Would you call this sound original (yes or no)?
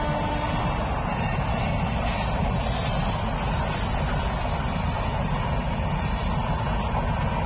yes